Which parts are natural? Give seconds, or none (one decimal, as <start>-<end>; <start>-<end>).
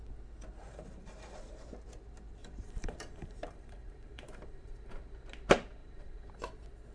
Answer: 0.0-0.6; 1.7-2.4; 5.0-5.8; 6.4-6.9